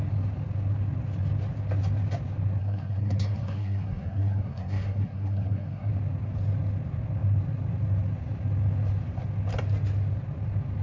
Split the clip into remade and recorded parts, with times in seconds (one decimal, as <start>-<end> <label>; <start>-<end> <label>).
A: 0.0-2.6 recorded; 2.6-5.9 remade; 5.9-10.8 recorded